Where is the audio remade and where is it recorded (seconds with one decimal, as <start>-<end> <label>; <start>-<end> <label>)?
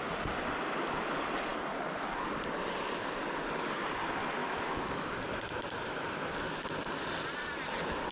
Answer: 0.0-4.4 recorded; 4.4-5.1 remade; 5.1-8.1 recorded